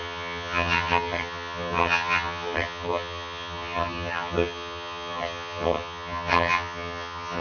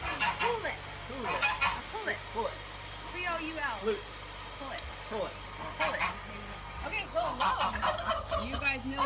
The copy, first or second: first